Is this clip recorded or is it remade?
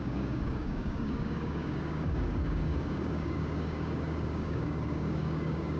remade